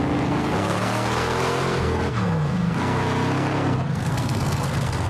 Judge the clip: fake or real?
fake